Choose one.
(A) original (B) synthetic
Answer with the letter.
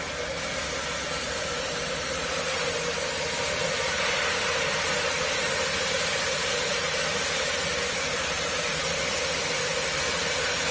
A